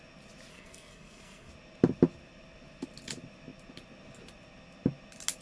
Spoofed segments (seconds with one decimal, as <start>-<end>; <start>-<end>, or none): 0.5-1.5